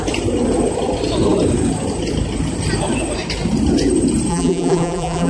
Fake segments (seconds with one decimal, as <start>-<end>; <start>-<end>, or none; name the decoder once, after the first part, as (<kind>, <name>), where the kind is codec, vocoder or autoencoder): 4.3-5.3 (vocoder, BigVGAN v2)